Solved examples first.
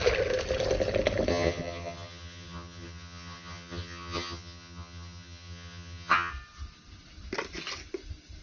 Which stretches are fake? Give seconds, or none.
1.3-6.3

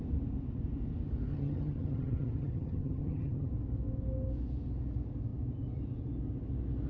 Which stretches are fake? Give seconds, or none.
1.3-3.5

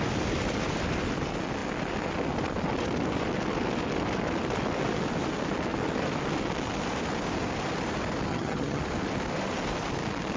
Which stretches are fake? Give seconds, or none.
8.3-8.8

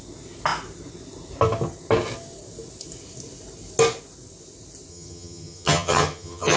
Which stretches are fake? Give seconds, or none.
4.9-6.6